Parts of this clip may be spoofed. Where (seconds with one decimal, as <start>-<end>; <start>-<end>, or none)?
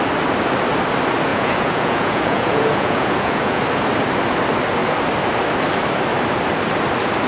1.3-3.6